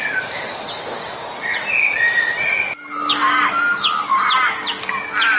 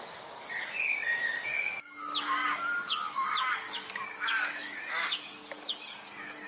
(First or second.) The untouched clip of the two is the first